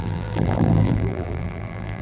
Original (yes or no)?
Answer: no